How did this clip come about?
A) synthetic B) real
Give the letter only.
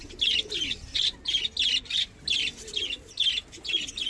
B